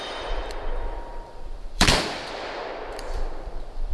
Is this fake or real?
fake